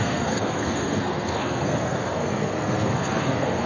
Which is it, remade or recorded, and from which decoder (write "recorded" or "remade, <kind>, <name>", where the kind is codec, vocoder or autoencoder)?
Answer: remade, codec, SNAC